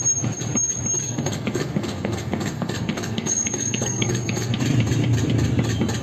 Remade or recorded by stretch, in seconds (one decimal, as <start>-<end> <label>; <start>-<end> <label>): 0.0-1.0 recorded; 1.0-4.6 remade; 4.6-6.0 recorded